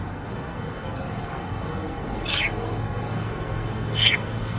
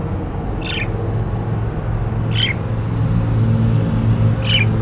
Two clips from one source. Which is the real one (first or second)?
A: second